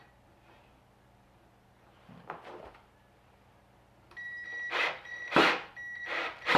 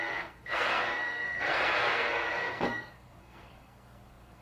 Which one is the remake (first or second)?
second